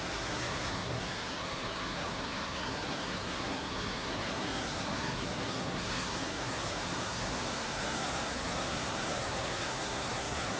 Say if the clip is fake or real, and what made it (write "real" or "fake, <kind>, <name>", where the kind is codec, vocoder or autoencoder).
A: fake, codec, SNAC